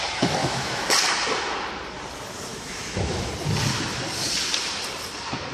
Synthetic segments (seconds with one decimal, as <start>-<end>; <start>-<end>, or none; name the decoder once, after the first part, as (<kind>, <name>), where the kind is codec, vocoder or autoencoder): 0.4-0.9 (autoencoder, DAC-VAE); 2.5-3.3